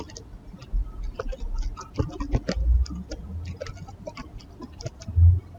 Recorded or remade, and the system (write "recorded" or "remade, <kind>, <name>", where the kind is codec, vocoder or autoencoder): recorded